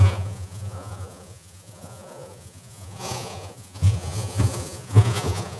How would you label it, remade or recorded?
remade